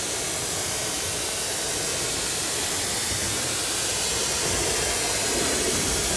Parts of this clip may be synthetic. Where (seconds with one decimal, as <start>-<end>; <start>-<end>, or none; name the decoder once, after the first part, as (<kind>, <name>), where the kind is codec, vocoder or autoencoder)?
1.9-4.0 (vocoder, BigVGAN v2)